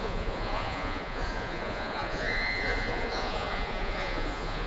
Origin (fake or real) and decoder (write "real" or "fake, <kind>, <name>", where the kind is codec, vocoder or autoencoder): fake, vocoder, Vocos